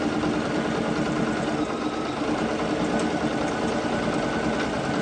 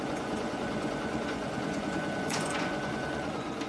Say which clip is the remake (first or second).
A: second